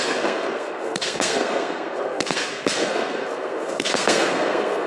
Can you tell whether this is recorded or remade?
remade